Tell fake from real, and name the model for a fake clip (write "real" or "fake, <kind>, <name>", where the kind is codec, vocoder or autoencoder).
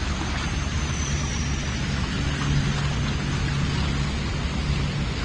real